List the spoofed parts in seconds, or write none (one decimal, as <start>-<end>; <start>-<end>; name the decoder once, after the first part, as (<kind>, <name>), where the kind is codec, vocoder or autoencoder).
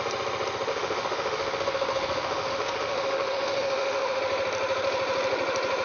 0.7-4.2 (autoencoder, DAC-VAE)